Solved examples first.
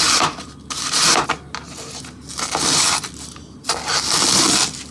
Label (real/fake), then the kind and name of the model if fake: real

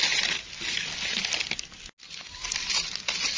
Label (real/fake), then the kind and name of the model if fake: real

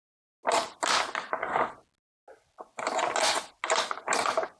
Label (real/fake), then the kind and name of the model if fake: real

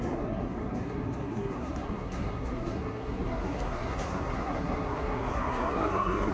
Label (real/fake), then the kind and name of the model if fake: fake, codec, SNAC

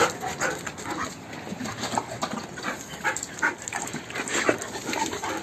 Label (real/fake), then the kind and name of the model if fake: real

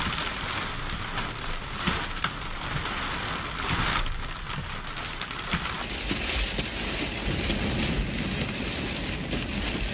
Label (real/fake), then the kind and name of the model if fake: real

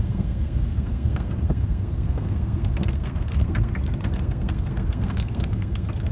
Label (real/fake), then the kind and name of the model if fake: fake, codec, SNAC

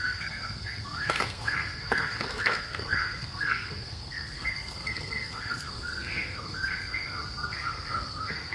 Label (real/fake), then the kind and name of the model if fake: fake, codec, SNAC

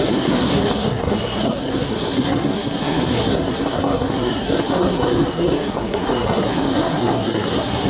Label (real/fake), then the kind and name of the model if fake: fake, codec, SNAC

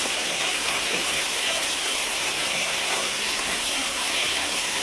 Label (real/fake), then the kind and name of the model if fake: fake, codec, SNAC